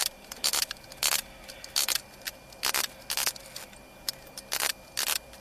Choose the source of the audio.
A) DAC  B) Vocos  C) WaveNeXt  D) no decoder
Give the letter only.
D